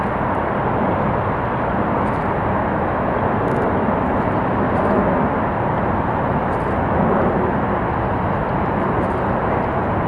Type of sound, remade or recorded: recorded